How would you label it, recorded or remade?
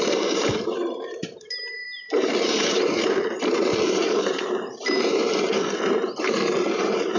remade